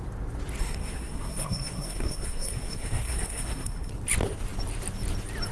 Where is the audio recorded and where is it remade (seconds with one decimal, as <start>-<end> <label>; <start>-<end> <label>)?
0.0-0.6 recorded; 0.6-3.9 remade; 3.9-5.5 recorded